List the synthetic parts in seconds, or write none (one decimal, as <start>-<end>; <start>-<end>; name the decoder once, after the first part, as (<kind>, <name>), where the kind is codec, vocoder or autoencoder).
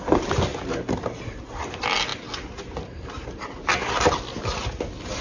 none